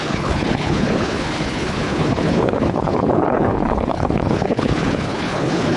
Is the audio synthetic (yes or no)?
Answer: yes